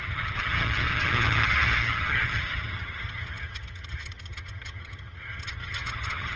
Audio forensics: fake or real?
fake